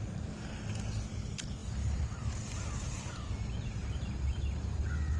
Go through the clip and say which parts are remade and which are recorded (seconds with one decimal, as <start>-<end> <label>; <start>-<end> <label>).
0.0-1.6 recorded; 1.6-3.1 remade; 3.1-5.2 recorded